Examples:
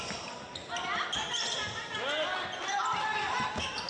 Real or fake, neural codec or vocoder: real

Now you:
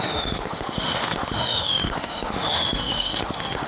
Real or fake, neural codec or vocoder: fake, autoencoder, DAC-VAE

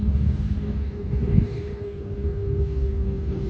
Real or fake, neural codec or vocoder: fake, codec, DAC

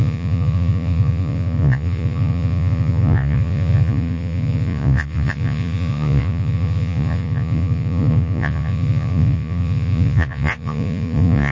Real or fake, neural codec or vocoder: fake, vocoder, Vocos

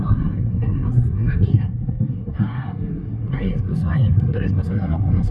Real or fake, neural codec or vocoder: fake, codec, SNAC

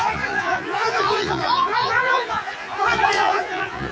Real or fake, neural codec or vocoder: fake, vocoder, Vocos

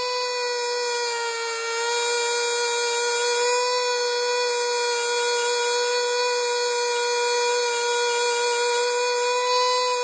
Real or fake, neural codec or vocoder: real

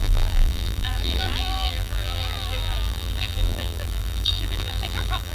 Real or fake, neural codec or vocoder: fake, vocoder, BigVGAN v2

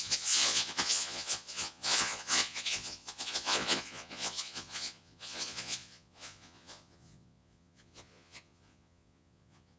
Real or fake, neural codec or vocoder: fake, vocoder, Vocos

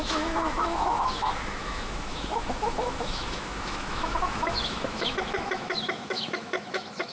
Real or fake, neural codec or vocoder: fake, autoencoder, DAC-VAE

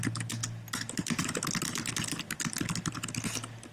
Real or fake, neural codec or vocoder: real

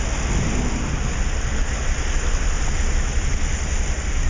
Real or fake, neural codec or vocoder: real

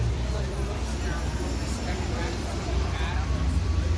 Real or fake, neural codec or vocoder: fake, vocoder, BigVGAN v2